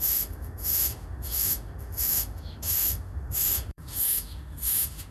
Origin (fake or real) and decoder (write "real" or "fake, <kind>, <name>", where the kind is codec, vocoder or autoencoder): fake, autoencoder, DAC-VAE